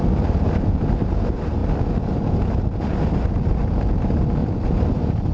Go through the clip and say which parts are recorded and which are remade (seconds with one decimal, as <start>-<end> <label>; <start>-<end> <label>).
0.0-1.6 recorded; 1.6-4.0 remade; 4.0-4.4 recorded; 4.4-5.3 remade